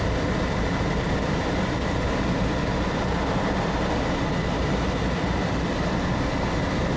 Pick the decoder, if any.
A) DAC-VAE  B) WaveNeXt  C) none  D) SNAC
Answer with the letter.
C